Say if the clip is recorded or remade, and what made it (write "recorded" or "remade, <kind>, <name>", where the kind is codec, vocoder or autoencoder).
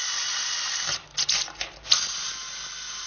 recorded